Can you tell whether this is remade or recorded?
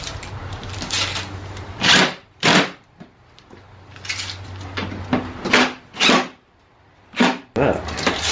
recorded